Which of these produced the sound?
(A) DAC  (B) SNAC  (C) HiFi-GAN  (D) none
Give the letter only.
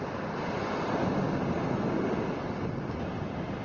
D